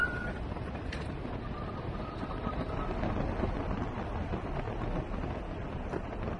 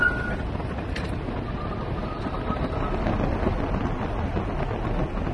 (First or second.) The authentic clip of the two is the second